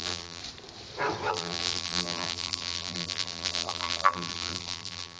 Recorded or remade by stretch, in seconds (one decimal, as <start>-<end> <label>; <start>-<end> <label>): 0.0-0.4 remade; 0.4-1.3 recorded; 1.3-5.2 remade